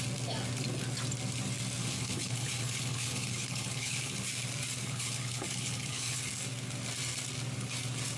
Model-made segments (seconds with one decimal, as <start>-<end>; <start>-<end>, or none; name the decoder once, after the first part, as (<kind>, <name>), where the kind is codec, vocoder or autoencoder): 1.8-4.3 (codec, HILCodec); 4.8-6.2